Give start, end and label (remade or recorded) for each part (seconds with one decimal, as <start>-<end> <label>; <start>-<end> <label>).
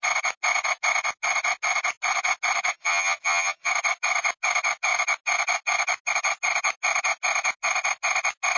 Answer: 0.0-2.7 recorded; 2.7-3.7 remade; 3.7-8.6 recorded